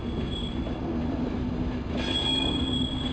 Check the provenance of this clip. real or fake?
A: real